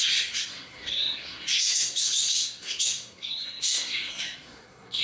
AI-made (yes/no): yes